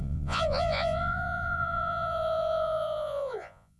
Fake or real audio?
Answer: fake